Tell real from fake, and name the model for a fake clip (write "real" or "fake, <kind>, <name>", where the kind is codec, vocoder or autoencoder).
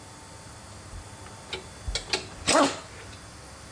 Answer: real